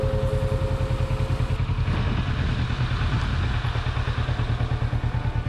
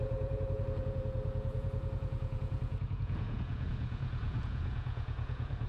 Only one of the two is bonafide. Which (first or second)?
first